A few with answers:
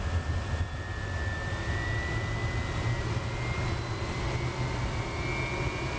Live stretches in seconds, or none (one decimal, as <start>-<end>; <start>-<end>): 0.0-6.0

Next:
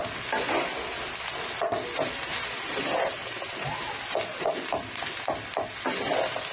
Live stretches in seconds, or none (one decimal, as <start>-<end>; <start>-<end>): 3.7-6.5

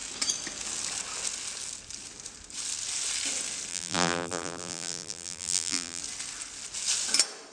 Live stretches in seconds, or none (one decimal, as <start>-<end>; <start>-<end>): 0.0-3.7; 6.0-7.5

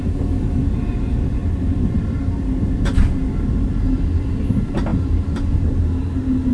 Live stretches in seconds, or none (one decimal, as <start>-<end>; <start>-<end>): 0.0-6.5